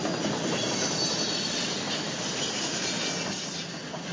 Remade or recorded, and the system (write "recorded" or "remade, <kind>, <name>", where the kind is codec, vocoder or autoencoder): recorded